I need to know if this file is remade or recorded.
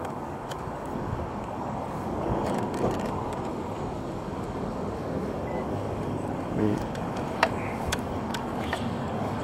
remade